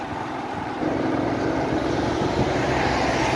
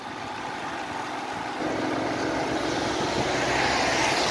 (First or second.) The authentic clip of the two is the second